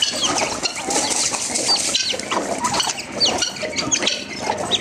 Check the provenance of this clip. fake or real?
real